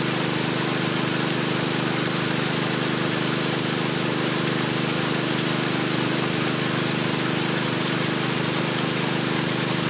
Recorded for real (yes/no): yes